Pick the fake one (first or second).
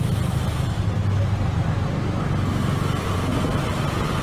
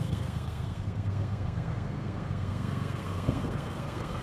second